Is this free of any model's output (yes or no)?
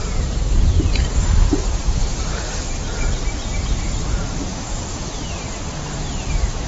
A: no